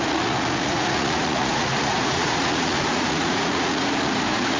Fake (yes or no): yes